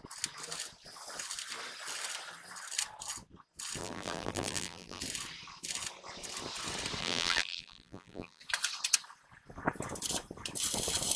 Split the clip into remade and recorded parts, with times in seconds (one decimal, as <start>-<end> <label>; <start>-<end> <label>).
0.0-3.8 recorded; 3.8-5.0 remade; 5.0-7.0 recorded; 7.0-8.4 remade; 8.4-11.2 recorded